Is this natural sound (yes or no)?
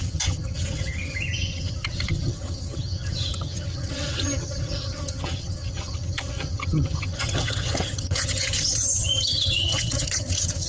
no